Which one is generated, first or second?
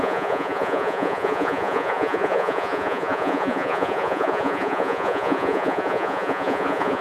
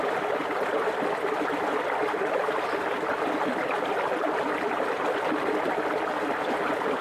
first